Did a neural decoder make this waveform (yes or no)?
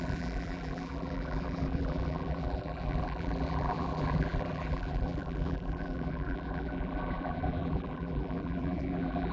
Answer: yes